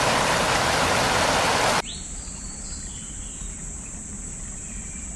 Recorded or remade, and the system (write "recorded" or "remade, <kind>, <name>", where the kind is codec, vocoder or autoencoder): remade, vocoder, BigVGAN v2